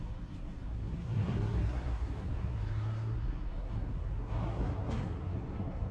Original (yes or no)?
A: no